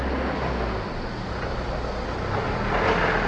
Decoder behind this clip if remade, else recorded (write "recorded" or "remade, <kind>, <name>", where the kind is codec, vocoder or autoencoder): recorded